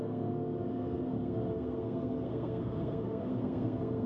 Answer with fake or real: fake